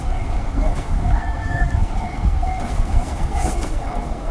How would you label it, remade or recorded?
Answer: remade